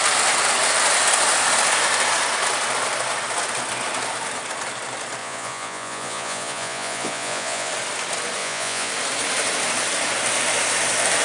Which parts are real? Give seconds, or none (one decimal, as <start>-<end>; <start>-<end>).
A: 0.0-5.2; 7.7-8.4; 8.9-11.2